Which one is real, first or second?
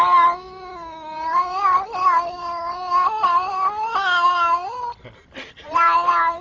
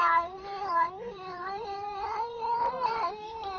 first